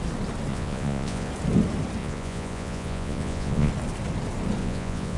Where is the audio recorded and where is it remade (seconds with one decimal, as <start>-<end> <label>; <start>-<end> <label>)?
0.0-0.5 recorded; 0.5-1.3 remade; 1.3-2.0 recorded; 2.0-3.7 remade; 3.7-4.6 recorded; 4.6-5.2 remade